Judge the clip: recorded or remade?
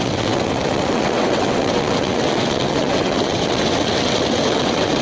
remade